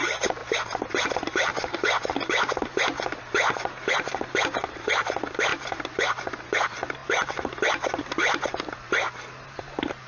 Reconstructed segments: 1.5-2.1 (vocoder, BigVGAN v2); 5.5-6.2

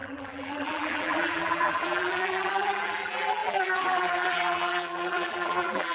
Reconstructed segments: 0.0-5.9 (vocoder, BigVGAN v2)

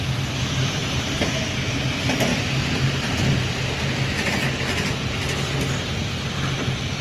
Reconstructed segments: none

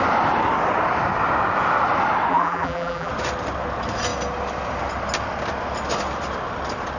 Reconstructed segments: 2.3-3.1 (vocoder, BigVGAN v2)

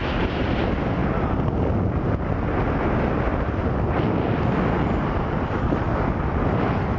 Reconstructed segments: none